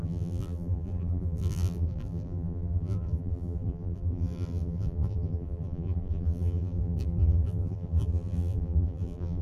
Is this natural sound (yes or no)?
no